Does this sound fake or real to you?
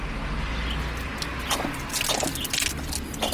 real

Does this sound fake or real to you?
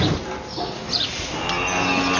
real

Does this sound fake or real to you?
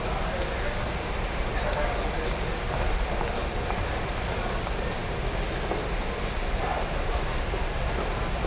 real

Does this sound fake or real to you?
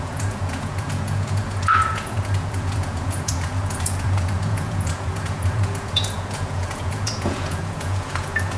fake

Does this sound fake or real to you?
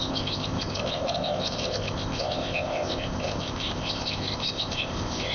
fake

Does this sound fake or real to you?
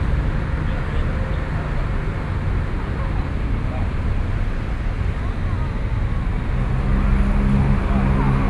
real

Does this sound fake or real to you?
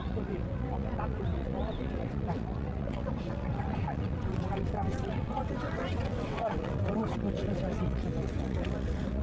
fake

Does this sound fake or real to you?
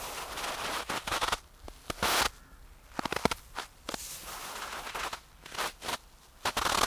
real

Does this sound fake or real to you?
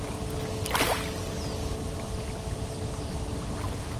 real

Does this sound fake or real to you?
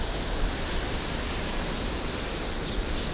real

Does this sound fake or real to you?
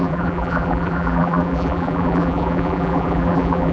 fake